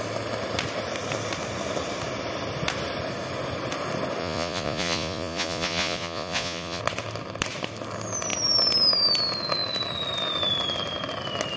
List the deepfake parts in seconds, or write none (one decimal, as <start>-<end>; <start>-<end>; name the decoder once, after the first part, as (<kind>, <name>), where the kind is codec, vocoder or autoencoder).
4.2-6.8 (vocoder, Vocos)